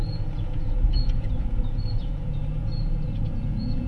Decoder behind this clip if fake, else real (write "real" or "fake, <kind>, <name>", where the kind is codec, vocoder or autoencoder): fake, vocoder, Vocos